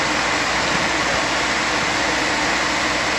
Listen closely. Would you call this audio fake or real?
real